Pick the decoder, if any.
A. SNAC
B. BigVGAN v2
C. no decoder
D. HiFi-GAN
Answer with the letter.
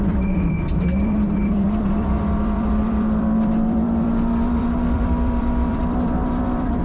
B